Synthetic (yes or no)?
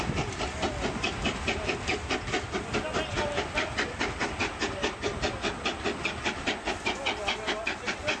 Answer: no